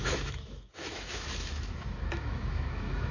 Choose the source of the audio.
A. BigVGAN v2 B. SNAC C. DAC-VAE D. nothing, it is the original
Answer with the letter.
C